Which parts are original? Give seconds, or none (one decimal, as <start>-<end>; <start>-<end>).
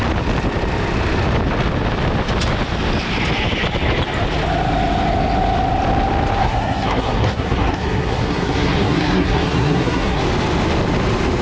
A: 0.0-6.4; 10.2-11.4